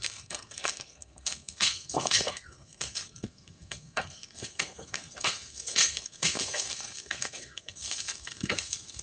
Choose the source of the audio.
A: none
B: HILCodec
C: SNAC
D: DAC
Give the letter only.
C